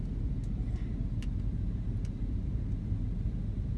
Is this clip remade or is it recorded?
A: recorded